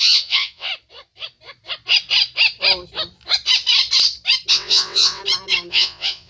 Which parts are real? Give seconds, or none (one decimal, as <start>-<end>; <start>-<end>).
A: 0.7-4.5; 5.2-5.7